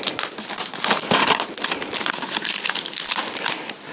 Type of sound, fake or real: real